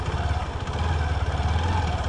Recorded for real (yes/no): yes